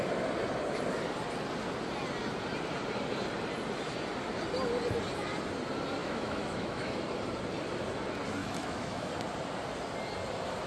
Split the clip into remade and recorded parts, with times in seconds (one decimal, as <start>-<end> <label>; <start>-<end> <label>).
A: 0.0-6.0 recorded; 6.0-7.0 remade; 7.0-8.4 recorded; 8.4-9.1 remade; 9.1-10.7 recorded